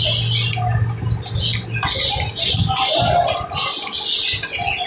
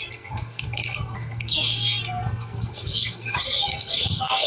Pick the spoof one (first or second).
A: second